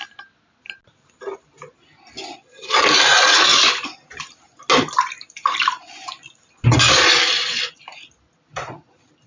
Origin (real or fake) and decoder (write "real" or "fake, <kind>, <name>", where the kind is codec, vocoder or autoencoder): real